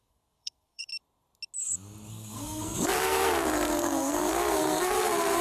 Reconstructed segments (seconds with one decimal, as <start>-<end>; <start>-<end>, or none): 0.0-0.9; 2.1-5.4